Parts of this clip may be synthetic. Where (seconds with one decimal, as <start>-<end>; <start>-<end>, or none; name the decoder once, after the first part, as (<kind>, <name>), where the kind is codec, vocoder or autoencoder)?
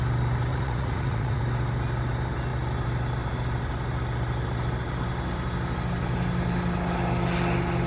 0.5-1.4 (vocoder, Vocos)